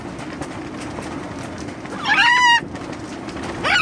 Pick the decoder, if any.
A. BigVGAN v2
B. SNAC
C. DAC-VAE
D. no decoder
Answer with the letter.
D